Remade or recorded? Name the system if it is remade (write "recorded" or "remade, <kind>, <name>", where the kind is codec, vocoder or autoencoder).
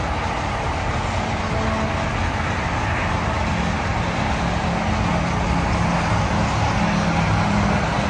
recorded